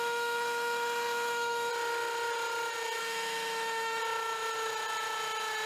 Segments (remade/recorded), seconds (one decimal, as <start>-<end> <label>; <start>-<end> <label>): 0.0-1.7 remade; 1.7-3.0 recorded; 3.0-4.0 remade; 4.0-5.7 recorded